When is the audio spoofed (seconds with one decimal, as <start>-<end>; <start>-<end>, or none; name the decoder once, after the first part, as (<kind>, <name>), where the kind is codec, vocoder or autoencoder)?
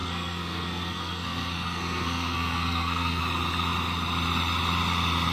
0.0-3.2 (codec, SNAC)